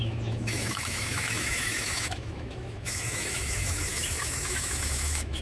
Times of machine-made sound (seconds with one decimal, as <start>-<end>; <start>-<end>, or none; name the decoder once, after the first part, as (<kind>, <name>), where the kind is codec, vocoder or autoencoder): 0.0-5.4 (autoencoder, DAC-VAE)

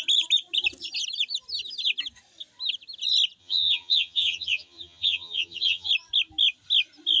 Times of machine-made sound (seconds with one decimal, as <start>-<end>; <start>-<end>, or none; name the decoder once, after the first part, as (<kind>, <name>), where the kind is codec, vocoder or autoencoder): 3.4-5.9 (vocoder, HiFi-GAN)

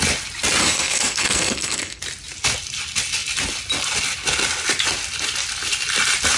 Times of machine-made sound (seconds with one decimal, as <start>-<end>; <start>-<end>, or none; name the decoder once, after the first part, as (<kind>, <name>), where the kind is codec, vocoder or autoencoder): 0.6-2.0 (codec, SNAC)

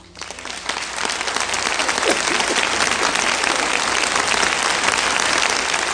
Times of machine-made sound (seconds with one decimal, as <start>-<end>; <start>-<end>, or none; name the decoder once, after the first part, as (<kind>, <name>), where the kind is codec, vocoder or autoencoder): none